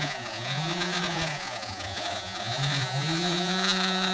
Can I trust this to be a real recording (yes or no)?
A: no